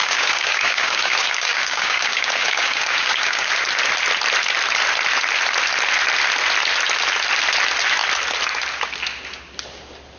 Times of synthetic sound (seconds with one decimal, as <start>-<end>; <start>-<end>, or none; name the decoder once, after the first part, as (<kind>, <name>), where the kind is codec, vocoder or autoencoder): 0.0-3.5 (codec, DAC)